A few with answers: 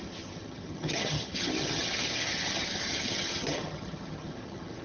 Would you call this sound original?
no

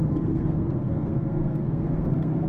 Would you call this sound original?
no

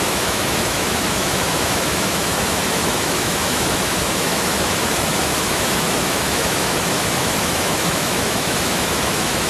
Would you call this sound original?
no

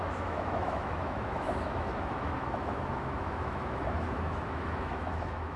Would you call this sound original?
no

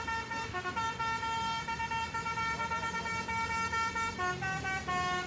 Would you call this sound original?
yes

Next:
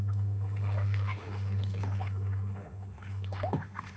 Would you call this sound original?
no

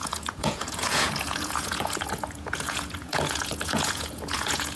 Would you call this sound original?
no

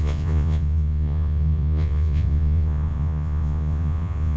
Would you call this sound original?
no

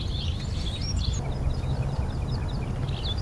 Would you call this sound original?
yes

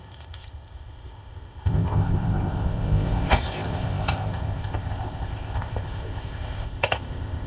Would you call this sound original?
no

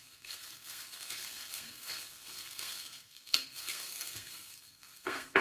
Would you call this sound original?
no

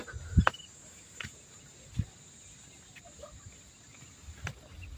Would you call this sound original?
yes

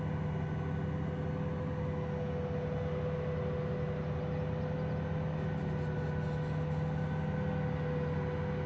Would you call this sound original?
yes